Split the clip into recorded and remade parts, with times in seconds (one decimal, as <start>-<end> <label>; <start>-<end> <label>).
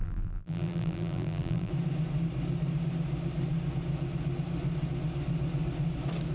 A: 0.0-1.7 remade; 1.7-6.3 recorded